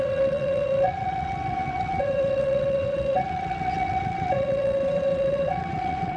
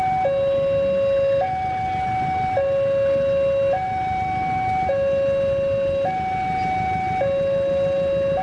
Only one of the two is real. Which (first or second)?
second